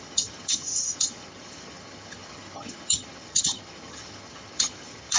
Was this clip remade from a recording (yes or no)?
yes